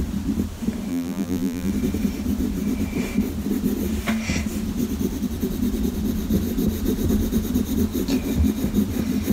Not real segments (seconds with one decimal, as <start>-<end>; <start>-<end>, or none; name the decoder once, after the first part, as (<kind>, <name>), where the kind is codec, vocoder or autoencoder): 0.9-1.7 (vocoder, BigVGAN v2)